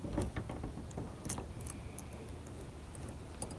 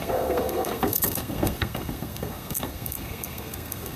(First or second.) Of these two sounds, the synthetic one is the second